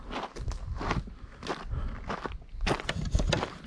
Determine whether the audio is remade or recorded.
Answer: recorded